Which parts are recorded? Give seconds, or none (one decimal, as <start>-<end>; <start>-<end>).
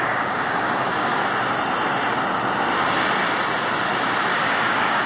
1.2-4.3